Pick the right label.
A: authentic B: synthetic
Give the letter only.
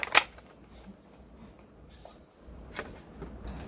A